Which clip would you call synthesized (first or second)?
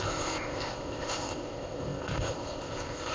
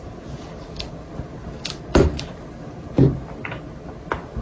first